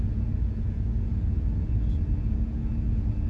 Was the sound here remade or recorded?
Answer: remade